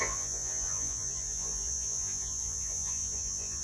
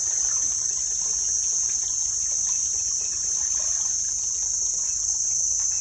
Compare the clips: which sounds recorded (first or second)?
second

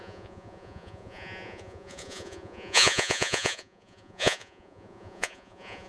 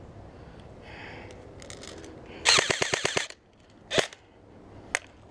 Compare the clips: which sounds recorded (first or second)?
second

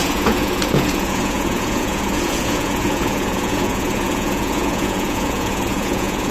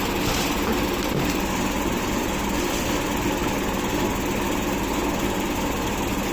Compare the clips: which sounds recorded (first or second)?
second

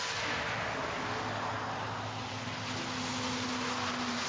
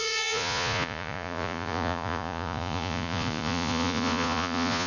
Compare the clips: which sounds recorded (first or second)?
first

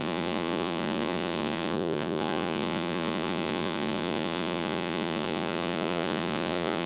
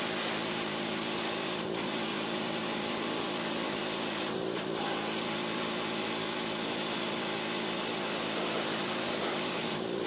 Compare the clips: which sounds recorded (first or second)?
second